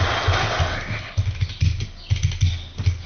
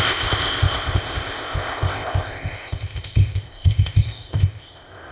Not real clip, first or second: second